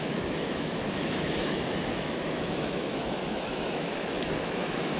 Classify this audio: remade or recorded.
remade